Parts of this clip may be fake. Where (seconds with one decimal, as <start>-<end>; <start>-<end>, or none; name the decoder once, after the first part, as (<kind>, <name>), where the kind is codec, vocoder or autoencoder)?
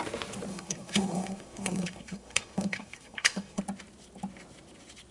0.5-3.6 (codec, SNAC)